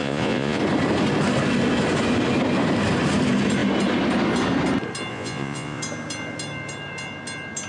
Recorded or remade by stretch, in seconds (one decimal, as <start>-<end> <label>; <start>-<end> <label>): 0.0-0.6 remade; 0.6-5.1 recorded; 5.1-5.8 remade; 5.8-7.7 recorded